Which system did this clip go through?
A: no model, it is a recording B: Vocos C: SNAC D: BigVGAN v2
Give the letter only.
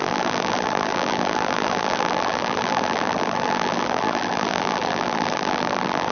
D